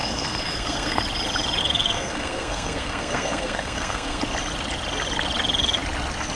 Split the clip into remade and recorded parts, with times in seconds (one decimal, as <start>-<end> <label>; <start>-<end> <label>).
0.0-1.0 remade; 1.0-1.6 recorded; 1.6-4.2 remade; 4.2-6.4 recorded